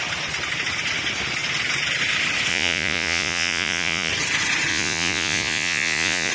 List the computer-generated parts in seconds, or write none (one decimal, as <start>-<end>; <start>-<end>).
2.5-4.1; 4.7-6.3